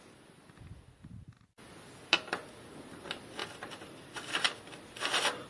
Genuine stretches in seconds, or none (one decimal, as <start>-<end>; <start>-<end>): 0.0-3.4; 4.1-5.5